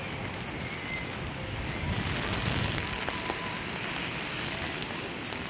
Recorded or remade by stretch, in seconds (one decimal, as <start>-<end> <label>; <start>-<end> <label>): 0.0-5.5 recorded